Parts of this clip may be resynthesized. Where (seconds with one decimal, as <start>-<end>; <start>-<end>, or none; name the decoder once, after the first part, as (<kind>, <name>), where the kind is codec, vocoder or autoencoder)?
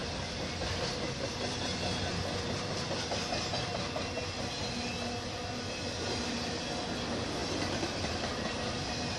none